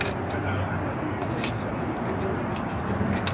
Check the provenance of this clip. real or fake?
real